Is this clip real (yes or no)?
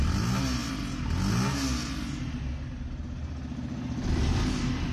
yes